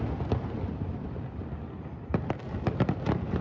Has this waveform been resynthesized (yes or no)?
no